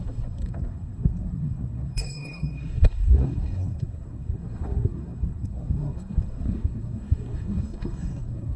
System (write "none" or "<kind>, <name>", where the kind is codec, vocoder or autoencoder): codec, SNAC